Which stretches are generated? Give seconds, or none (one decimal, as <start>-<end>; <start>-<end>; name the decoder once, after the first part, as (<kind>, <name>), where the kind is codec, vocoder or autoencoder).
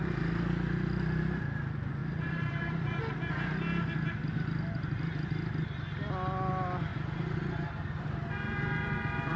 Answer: 2.0-3.0 (vocoder, BigVGAN v2); 6.9-7.4